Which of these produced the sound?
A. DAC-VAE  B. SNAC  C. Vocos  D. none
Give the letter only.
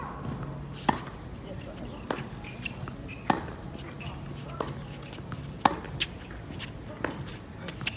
D